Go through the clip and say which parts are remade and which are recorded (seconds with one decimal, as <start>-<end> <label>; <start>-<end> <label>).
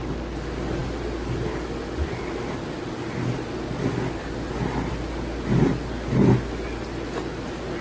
0.0-7.8 recorded